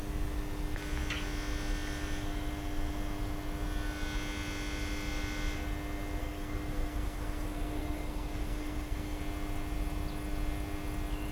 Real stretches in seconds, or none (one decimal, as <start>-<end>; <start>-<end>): 0.0-6.2; 9.2-11.3